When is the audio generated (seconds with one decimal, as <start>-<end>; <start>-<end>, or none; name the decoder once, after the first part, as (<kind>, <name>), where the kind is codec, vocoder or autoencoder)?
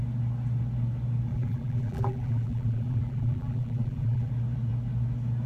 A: 1.3-4.3 (vocoder, BigVGAN v2)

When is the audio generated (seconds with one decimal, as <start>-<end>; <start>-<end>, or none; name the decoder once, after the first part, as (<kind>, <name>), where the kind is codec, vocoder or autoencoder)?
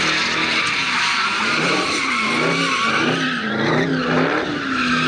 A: 0.8-3.9 (vocoder, BigVGAN v2)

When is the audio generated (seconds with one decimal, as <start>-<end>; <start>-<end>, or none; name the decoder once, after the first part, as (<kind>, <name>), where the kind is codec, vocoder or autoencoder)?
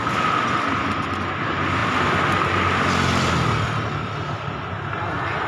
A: none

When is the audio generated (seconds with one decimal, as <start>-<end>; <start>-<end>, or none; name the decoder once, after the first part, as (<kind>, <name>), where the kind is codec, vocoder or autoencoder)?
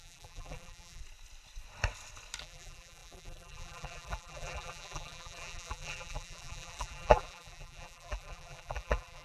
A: 0.0-1.0 (vocoder, BigVGAN v2); 2.4-9.2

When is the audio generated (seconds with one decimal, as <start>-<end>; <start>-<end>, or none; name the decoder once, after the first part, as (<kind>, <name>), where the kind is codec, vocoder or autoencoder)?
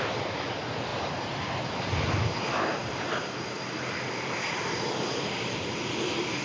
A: 0.0-0.9 (vocoder, BigVGAN v2); 1.7-6.4